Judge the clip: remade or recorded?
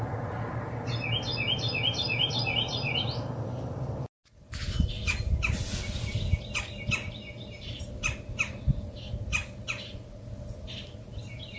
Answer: recorded